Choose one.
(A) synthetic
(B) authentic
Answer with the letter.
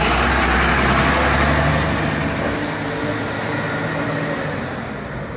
B